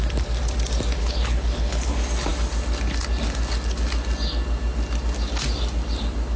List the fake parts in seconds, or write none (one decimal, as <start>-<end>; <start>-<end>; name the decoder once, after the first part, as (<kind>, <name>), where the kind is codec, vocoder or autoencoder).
1.0-1.9 (codec, HILCodec)